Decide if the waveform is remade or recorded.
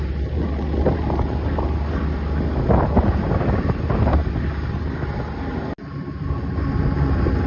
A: recorded